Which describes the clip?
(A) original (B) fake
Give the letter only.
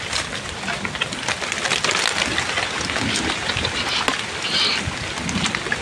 A